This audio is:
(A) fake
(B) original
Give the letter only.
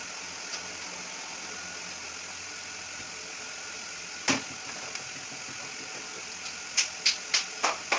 B